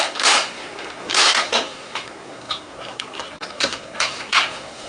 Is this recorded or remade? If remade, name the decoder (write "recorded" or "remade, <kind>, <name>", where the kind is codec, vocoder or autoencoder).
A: remade, codec, SNAC